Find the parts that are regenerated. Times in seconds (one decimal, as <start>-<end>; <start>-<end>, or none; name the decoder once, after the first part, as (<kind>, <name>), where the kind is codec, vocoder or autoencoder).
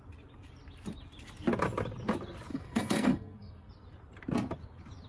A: 2.5-3.7 (codec, SNAC)